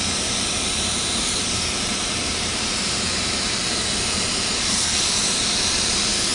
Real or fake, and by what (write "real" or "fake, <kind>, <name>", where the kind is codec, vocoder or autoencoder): fake, vocoder, BigVGAN v2